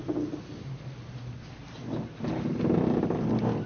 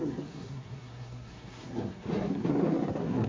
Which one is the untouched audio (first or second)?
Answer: first